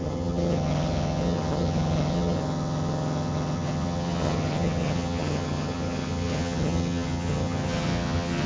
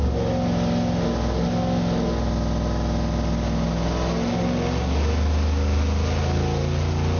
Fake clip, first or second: first